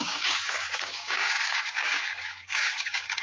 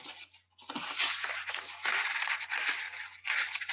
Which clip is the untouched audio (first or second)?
second